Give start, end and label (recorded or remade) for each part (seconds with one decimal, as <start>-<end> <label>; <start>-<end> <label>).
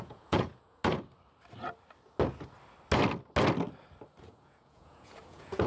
0.0-0.8 remade; 0.8-4.2 recorded; 4.2-5.7 remade